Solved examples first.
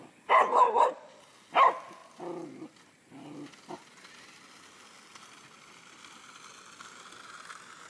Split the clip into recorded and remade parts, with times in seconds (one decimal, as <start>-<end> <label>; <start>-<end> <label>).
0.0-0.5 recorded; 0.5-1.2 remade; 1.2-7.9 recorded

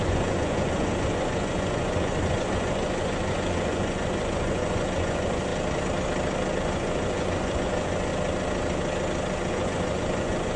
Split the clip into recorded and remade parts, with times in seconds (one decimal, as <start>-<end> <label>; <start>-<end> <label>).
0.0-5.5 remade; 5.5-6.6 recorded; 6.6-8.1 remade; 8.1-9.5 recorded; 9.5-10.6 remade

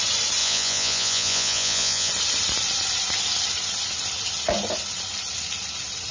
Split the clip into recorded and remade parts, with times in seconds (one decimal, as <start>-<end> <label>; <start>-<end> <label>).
0.0-0.4 recorded; 0.4-2.1 remade; 2.1-6.1 recorded

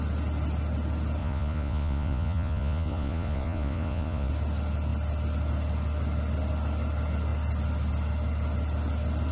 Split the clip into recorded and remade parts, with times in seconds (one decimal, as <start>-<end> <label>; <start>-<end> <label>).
0.0-1.2 recorded; 1.2-4.3 remade; 4.3-9.3 recorded

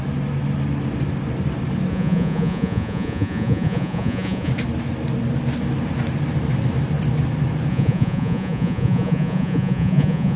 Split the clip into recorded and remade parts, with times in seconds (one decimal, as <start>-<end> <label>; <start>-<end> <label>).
0.0-1.9 recorded; 1.9-4.5 remade; 4.5-7.7 recorded; 7.7-10.4 remade

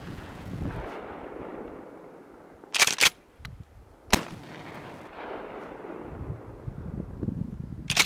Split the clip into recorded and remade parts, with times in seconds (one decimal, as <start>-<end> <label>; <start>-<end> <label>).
0.0-0.6 remade; 0.6-8.1 recorded

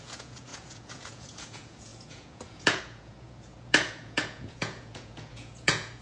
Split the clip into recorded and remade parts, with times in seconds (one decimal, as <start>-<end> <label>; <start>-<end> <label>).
0.0-6.0 remade